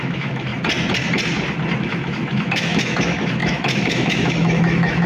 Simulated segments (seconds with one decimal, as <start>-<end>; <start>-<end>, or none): 0.0-0.5; 1.8-5.1